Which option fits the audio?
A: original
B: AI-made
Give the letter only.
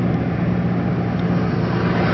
A